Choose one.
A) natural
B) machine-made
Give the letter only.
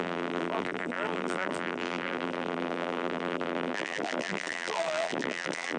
B